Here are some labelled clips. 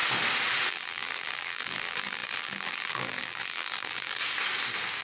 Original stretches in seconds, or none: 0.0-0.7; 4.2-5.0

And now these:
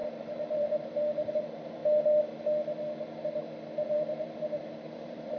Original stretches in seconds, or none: 1.8-3.9